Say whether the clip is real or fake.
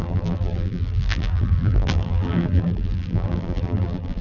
fake